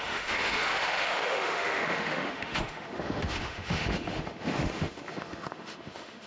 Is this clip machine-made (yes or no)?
yes